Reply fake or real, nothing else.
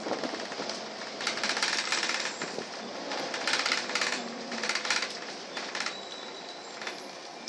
fake